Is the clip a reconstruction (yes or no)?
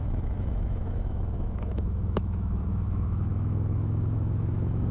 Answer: yes